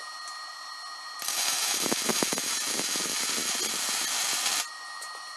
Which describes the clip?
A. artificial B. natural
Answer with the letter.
B